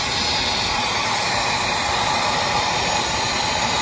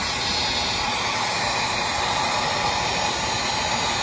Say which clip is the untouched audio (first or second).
second